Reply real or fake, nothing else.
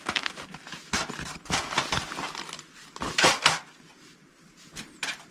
real